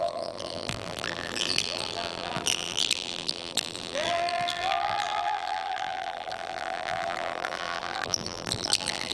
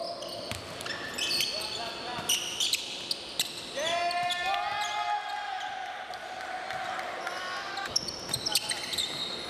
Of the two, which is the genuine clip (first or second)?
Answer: second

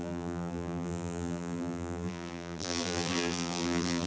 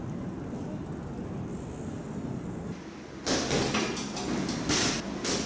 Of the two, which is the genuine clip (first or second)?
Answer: second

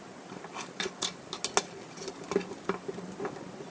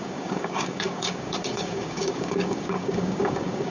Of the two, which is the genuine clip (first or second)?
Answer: first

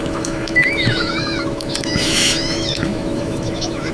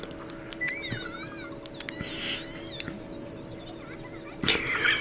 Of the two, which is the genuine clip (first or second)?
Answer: second